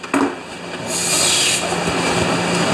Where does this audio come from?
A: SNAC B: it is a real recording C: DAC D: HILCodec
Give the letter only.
B